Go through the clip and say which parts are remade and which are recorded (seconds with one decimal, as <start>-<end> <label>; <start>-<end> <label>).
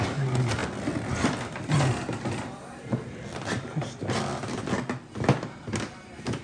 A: 0.0-6.4 recorded